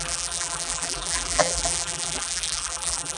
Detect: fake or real fake